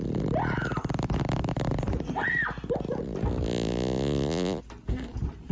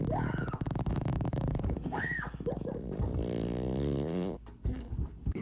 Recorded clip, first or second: first